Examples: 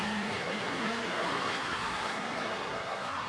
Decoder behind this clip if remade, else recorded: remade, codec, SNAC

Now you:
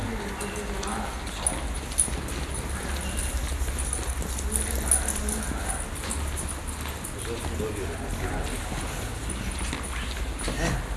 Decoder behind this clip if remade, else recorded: recorded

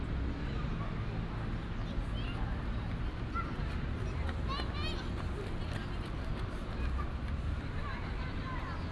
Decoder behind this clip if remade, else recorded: recorded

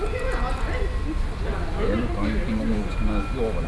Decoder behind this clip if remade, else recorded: recorded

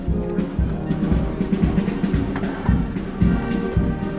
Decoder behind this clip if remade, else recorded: recorded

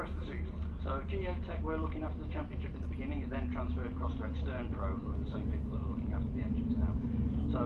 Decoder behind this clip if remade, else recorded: recorded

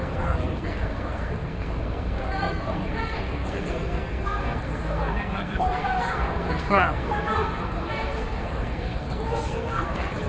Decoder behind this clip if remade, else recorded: remade, codec, SNAC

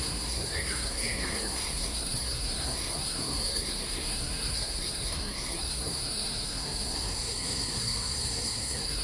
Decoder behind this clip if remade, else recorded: remade, codec, SNAC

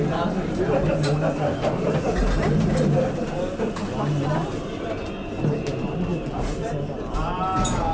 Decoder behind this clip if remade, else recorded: recorded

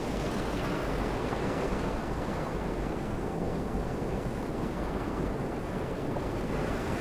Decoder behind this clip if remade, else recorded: remade, codec, SNAC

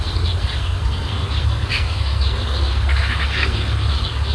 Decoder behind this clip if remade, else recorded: remade, codec, SNAC